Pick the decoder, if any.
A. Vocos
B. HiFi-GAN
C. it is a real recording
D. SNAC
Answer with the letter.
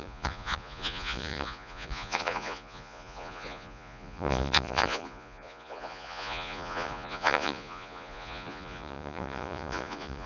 A